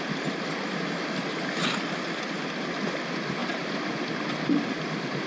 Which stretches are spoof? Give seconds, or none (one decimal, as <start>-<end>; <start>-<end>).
none